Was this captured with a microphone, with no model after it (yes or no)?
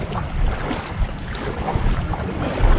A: yes